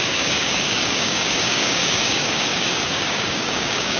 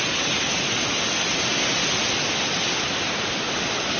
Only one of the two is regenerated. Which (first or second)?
first